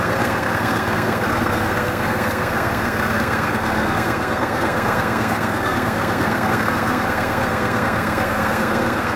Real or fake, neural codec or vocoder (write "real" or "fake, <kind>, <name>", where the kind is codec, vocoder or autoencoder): fake, codec, SNAC